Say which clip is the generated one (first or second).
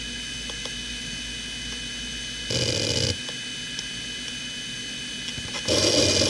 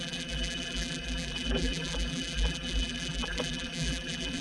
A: second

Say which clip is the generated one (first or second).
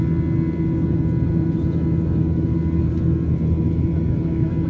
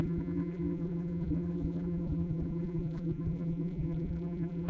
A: second